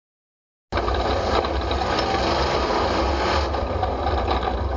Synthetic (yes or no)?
no